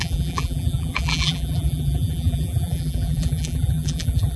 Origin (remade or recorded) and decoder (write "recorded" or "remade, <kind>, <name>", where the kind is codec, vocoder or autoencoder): remade, vocoder, BigVGAN v2